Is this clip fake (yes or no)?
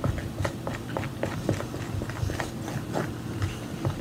no